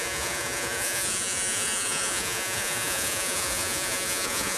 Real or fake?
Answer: fake